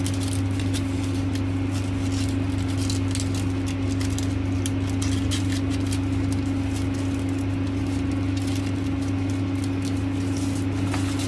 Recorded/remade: recorded